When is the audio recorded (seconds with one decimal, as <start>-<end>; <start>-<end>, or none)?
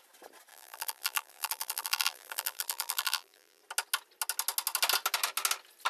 0.0-0.5; 3.6-5.9